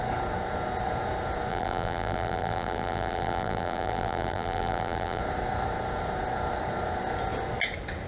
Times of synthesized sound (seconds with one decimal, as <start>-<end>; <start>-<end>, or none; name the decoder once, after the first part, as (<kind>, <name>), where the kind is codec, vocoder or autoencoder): 1.5-5.2 (vocoder, BigVGAN v2)